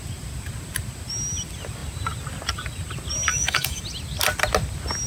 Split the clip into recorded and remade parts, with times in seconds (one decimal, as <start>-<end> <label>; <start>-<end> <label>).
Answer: 0.0-3.3 recorded; 3.3-3.8 remade; 3.8-5.1 recorded